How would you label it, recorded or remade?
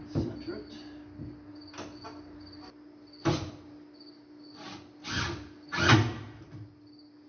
recorded